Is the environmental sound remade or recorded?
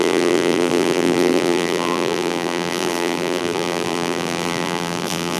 remade